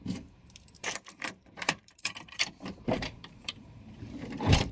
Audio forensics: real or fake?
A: fake